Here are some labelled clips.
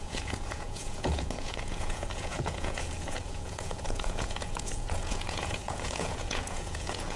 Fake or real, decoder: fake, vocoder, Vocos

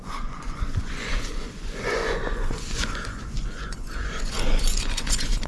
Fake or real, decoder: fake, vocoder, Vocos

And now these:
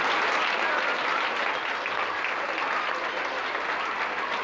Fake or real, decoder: real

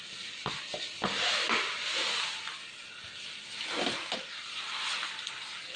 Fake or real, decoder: real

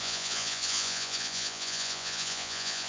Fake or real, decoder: fake, vocoder, Vocos